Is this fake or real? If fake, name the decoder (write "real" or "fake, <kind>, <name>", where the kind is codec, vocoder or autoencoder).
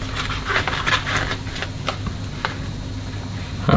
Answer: real